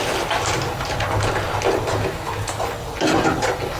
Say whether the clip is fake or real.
real